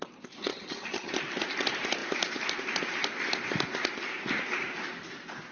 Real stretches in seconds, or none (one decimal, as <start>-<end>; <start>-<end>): 0.0-0.5; 1.1-5.5